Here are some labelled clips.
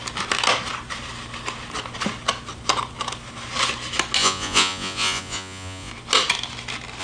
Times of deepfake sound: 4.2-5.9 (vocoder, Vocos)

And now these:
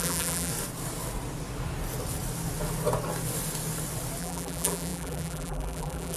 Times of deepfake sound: 0.0-0.5 (vocoder, BigVGAN v2); 4.2-6.2

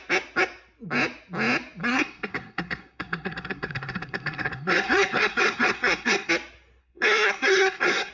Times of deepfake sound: 1.8-6.3 (codec, SNAC); 6.8-8.1

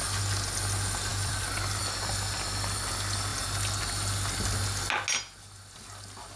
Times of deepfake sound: 1.1-1.8 (vocoder, BigVGAN v2)

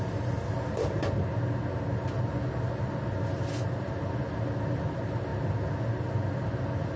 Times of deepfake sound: none

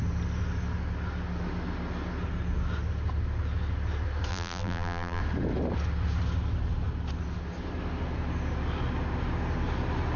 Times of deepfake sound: 4.3-5.2 (vocoder, BigVGAN v2)